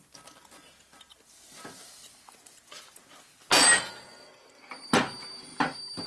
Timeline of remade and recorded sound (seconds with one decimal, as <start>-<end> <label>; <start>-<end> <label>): 0.0-5.5 recorded; 5.5-6.1 remade